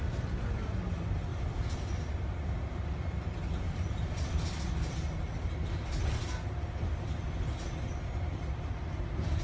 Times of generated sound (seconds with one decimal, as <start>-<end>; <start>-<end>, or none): none